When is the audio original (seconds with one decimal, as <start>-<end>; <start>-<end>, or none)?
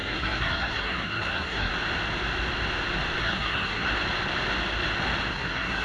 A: 1.7-3.2; 3.9-5.3